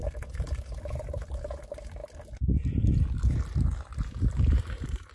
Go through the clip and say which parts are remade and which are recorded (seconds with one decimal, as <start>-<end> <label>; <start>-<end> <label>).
0.0-2.0 remade; 2.0-4.0 recorded; 4.0-5.1 remade